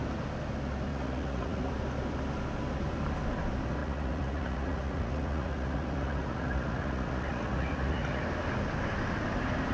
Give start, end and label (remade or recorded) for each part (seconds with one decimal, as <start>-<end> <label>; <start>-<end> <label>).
0.0-0.9 recorded; 0.9-1.7 remade; 1.7-3.8 recorded; 3.8-8.2 remade; 8.2-9.7 recorded